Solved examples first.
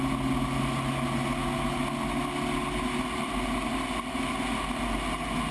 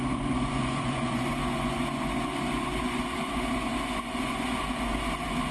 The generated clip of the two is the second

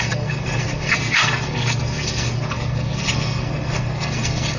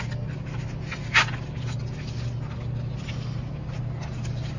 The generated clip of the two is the first